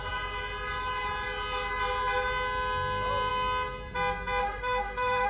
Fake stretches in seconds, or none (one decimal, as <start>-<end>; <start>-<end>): 4.4-5.3